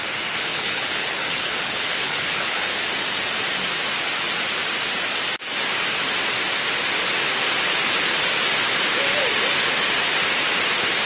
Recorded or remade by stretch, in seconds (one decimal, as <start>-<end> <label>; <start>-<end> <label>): 0.0-0.5 recorded; 0.5-2.7 remade; 2.7-11.1 recorded

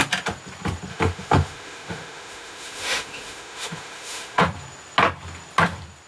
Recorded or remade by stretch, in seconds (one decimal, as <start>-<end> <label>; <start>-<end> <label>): 0.0-0.9 recorded; 0.9-4.4 remade; 4.4-6.1 recorded

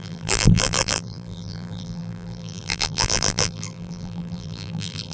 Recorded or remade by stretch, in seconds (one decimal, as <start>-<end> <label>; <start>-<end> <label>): 0.0-5.1 remade

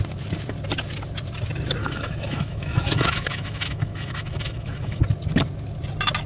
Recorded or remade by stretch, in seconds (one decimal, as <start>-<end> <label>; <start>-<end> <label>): 0.0-1.8 recorded; 1.8-5.0 remade; 5.0-6.3 recorded

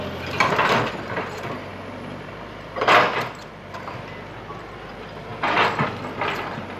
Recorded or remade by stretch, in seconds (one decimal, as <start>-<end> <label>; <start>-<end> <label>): 0.0-1.7 remade; 1.7-2.3 recorded; 2.3-6.8 remade

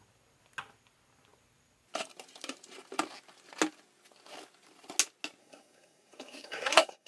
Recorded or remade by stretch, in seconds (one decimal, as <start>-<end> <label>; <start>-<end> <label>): 0.0-5.4 recorded; 5.4-7.1 remade

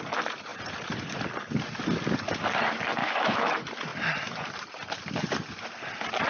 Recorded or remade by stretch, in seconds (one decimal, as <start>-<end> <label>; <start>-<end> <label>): 0.0-3.0 recorded; 3.0-3.5 remade; 3.5-6.3 recorded

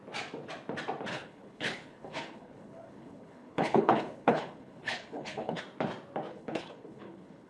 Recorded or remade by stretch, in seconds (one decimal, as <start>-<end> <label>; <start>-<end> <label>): 0.0-1.1 recorded; 1.1-5.6 remade; 5.6-6.3 recorded; 6.3-7.5 remade